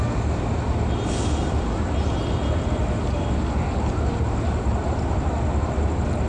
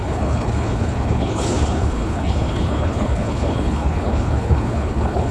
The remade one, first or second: second